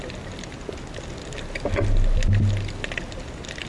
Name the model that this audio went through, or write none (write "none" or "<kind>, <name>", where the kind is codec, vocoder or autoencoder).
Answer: none